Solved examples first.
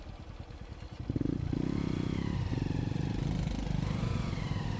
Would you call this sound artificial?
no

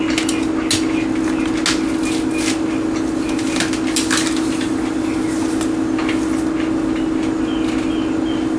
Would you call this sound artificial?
no